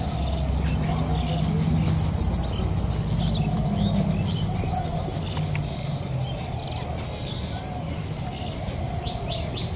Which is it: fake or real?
real